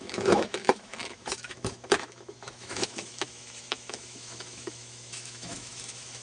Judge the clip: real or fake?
fake